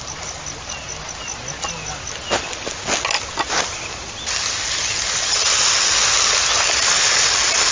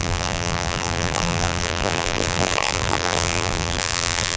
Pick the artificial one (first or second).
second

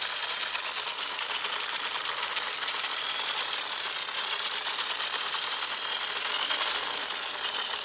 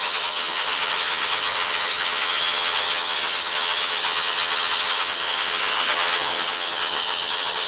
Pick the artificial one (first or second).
second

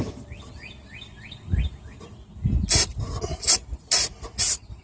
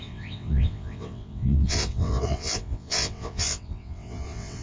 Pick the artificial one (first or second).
second